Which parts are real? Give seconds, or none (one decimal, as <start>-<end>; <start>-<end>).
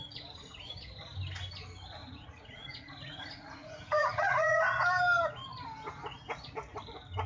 0.0-2.0; 4.6-7.3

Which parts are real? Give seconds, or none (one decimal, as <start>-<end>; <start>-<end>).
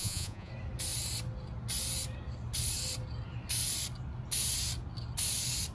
0.5-5.7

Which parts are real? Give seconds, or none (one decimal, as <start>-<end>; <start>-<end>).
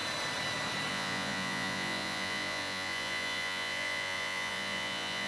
0.0-0.9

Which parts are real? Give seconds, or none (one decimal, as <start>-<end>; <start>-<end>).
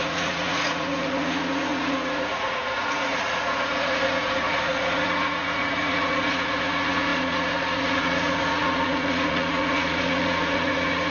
none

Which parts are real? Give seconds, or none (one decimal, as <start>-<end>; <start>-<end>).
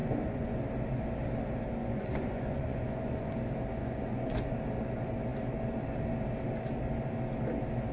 0.6-1.8; 3.3-3.8; 4.4-7.9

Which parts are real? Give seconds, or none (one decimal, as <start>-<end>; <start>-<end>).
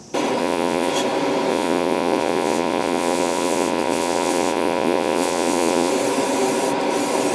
0.0-0.4; 0.9-1.5; 5.9-7.3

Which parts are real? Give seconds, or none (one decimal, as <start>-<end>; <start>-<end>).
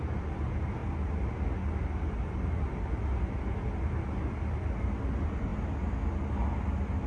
0.0-7.1